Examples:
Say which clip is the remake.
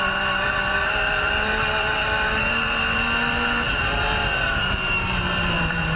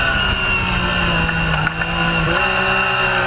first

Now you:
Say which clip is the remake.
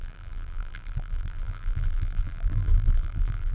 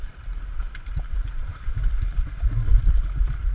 first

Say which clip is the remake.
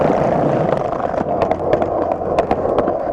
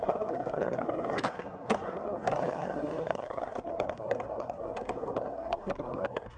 second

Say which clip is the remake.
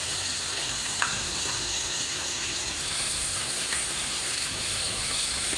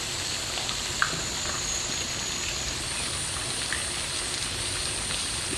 first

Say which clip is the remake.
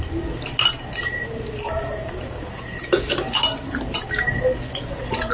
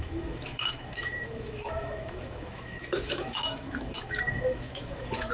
second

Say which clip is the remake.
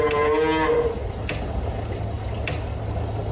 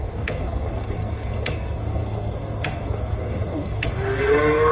second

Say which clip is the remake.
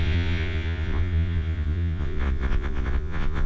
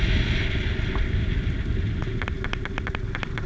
first